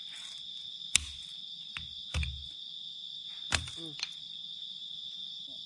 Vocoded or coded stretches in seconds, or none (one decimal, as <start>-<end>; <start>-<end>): none